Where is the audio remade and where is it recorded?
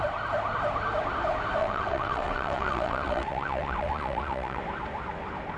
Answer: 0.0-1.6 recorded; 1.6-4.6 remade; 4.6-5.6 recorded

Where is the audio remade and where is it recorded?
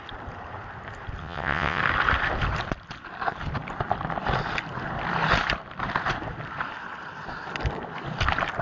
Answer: 0.0-1.2 recorded; 1.2-1.8 remade; 1.8-8.6 recorded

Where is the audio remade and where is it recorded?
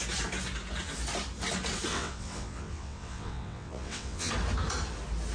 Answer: 0.0-1.9 recorded; 1.9-4.3 remade; 4.3-5.3 recorded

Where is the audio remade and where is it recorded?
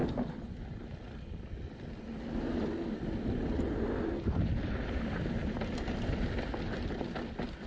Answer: 0.0-7.7 recorded